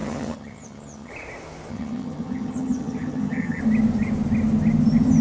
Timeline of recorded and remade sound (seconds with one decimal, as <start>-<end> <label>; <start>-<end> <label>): 0.0-1.1 remade; 1.1-1.7 recorded; 1.7-3.6 remade; 3.6-5.2 recorded